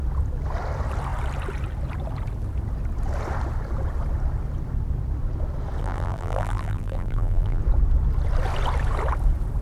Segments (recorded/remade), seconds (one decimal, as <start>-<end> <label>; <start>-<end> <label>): 0.0-5.8 recorded; 5.8-7.6 remade; 7.6-9.6 recorded